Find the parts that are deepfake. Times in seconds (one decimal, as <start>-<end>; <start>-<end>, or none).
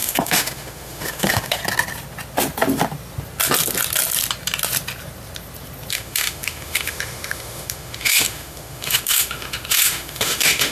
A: 0.0-1.6; 5.9-10.7